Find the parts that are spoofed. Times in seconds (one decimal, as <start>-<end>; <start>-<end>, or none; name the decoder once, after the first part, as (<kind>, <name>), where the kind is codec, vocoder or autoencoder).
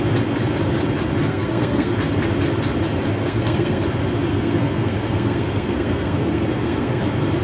1.2-1.9 (codec, SNAC); 3.1-3.8; 4.3-7.0